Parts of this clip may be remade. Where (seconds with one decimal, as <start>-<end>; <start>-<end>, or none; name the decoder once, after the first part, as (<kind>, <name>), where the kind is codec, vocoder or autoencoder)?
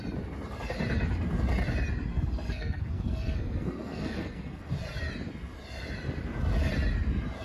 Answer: 2.1-4.7 (codec, SNAC)